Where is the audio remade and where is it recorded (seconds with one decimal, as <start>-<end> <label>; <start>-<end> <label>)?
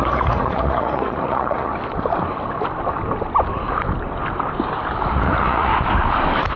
0.0-1.7 remade; 1.7-5.1 recorded; 5.1-5.7 remade; 5.7-6.6 recorded